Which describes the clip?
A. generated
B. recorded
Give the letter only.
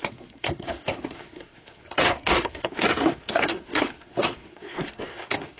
A